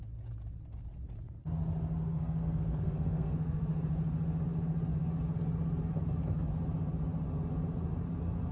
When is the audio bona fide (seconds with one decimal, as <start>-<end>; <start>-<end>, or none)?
0.0-2.1; 3.7-8.5